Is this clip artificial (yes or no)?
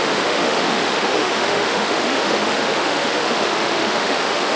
yes